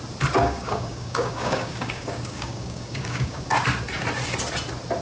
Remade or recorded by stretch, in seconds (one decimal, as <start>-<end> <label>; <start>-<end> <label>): 0.0-0.4 recorded; 0.4-3.4 remade; 3.4-5.0 recorded